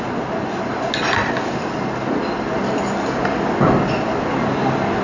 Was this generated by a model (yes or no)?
no